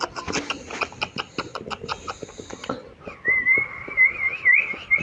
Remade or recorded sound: remade